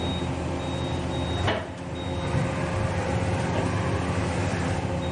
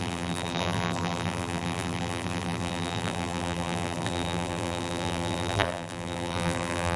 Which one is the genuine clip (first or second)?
first